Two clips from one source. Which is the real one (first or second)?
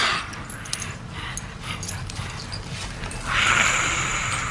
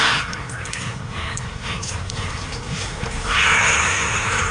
first